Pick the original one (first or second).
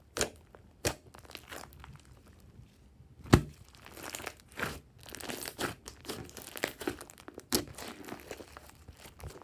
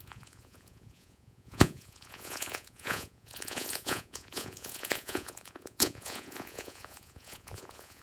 first